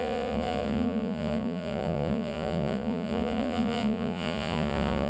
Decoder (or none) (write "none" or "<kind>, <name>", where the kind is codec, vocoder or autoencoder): vocoder, Vocos